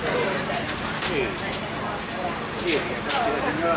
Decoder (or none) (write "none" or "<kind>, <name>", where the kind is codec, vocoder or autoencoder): none